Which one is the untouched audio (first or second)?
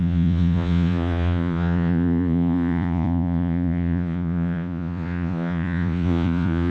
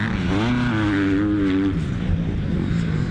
second